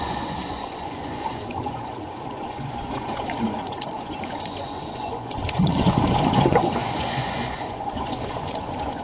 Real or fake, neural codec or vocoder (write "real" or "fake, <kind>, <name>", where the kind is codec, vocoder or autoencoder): fake, vocoder, Vocos